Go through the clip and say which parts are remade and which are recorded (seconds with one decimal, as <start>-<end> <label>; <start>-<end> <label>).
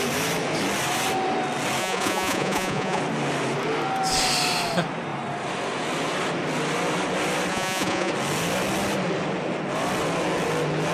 0.0-1.8 recorded; 1.8-3.0 remade; 3.0-7.5 recorded; 7.5-8.1 remade; 8.1-10.9 recorded